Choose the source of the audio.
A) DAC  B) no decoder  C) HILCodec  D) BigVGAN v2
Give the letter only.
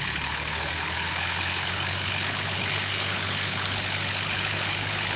C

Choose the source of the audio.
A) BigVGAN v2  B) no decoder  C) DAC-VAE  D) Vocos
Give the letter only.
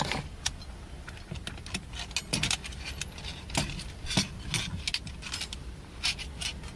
B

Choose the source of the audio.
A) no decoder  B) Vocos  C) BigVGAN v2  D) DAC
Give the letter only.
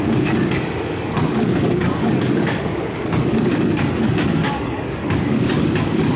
D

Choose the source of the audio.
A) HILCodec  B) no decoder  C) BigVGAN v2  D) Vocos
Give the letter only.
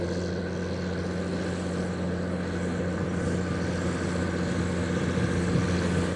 B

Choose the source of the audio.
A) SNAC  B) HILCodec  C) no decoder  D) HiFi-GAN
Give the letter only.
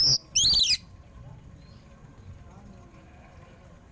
C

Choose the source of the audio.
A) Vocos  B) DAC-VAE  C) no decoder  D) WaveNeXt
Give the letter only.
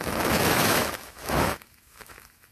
B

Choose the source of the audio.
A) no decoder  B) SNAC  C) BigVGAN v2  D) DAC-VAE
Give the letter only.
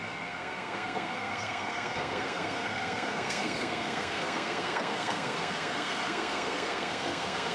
B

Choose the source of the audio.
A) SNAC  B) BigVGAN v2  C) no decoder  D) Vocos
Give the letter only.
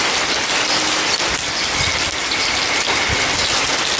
C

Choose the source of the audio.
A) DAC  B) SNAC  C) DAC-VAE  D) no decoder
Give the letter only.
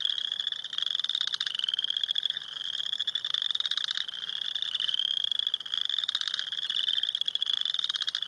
D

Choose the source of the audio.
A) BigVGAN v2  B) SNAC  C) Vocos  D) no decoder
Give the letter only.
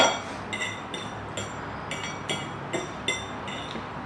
D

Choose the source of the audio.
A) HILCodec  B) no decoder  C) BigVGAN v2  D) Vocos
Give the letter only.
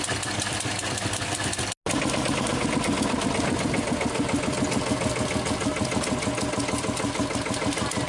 B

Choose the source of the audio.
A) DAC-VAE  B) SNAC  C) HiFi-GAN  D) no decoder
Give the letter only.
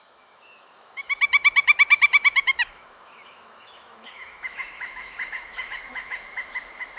A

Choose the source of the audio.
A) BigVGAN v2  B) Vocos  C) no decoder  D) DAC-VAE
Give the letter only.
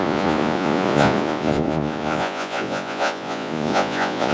B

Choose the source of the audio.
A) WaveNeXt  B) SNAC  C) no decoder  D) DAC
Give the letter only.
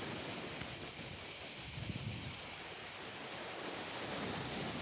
C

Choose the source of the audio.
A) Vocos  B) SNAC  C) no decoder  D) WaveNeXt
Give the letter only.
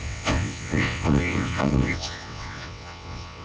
D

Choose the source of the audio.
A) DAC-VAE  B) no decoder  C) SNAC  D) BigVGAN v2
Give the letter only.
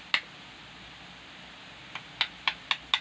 B